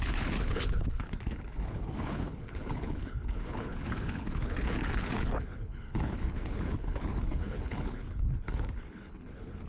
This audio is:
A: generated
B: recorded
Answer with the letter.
A